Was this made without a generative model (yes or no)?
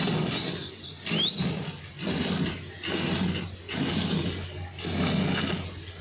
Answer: yes